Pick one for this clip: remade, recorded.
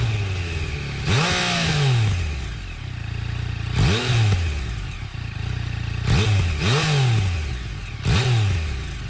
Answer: recorded